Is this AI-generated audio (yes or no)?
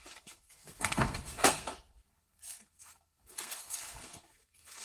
yes